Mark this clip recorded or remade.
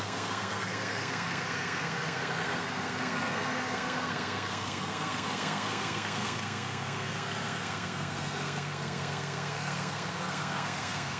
remade